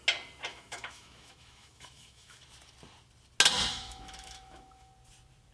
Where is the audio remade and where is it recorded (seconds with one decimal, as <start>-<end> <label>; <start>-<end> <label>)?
0.0-0.5 recorded; 0.5-2.4 remade; 2.4-3.7 recorded; 3.7-4.9 remade; 4.9-5.5 recorded